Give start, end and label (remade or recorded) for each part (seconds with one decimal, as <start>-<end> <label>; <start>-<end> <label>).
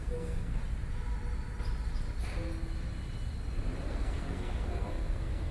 0.0-0.6 remade; 0.6-3.9 recorded; 3.9-5.5 remade